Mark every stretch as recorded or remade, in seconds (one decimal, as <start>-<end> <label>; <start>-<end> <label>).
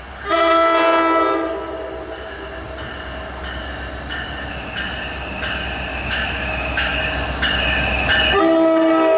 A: 0.0-5.9 recorded; 5.9-7.0 remade; 7.0-9.2 recorded